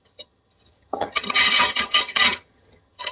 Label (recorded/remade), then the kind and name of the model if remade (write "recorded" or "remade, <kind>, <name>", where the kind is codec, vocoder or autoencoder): remade, vocoder, HiFi-GAN